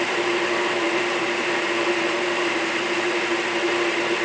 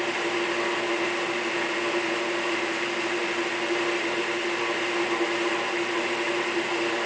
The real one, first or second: second